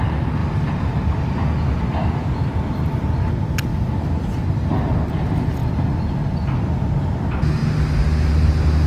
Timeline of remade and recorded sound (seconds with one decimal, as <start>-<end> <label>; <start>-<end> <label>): 0.0-0.4 recorded; 0.4-3.3 remade; 3.3-8.9 recorded

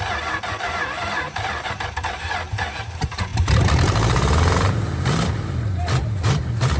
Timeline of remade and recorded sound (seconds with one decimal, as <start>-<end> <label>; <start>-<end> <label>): 0.0-6.8 remade

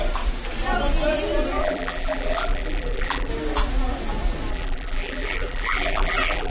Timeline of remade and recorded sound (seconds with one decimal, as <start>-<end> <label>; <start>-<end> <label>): 0.0-1.6 recorded; 1.6-3.3 remade; 3.3-4.5 recorded; 4.5-6.5 remade

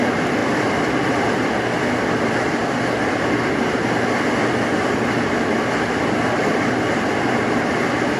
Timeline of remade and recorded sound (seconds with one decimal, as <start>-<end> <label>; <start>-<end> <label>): 0.0-0.4 recorded; 0.4-1.9 remade; 1.9-8.2 recorded

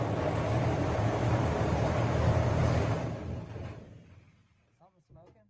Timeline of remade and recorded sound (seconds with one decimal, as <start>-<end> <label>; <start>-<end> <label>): 0.0-2.6 remade; 2.6-4.5 recorded; 4.5-5.5 remade

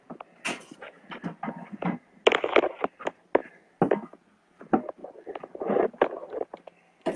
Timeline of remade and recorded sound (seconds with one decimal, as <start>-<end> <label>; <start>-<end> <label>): 0.0-3.4 recorded; 3.4-3.9 remade; 3.9-7.2 recorded

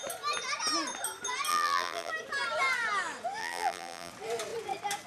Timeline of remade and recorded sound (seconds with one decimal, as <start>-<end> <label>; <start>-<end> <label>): 0.0-1.5 recorded; 1.5-2.1 remade; 2.1-3.4 recorded; 3.4-4.1 remade; 4.1-5.1 recorded